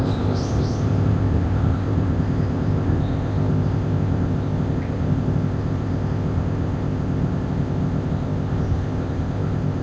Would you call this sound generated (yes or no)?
yes